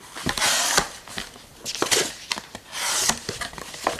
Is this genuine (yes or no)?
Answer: yes